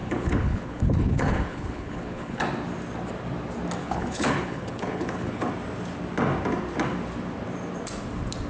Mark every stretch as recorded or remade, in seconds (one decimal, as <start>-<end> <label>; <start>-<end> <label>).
0.0-2.4 remade; 2.4-3.8 recorded; 3.8-5.5 remade; 5.5-8.5 recorded